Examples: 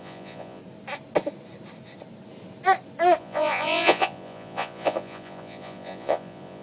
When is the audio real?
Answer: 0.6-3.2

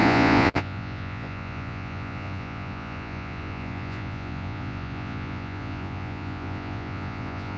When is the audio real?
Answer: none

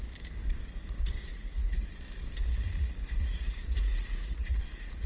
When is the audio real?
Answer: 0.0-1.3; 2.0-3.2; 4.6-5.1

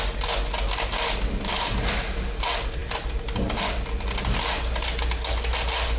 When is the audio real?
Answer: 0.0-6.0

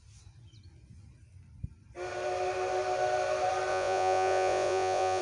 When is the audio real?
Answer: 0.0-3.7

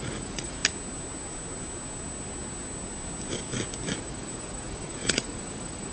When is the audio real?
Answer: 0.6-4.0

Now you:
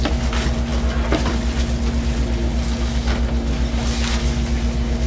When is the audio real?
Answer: 0.0-5.1